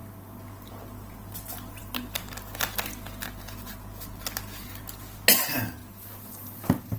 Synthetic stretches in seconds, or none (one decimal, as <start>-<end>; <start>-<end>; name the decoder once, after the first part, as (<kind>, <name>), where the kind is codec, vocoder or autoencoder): none